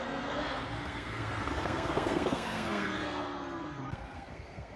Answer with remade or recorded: remade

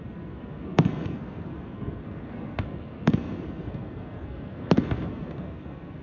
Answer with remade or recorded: remade